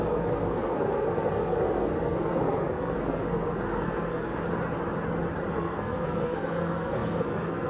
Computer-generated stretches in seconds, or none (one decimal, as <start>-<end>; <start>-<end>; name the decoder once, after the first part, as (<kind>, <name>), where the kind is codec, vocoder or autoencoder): 0.0-4.3 (codec, SNAC); 5.5-7.7